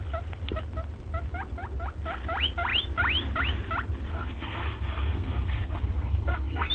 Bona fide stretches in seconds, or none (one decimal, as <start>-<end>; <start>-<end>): 0.0-4.1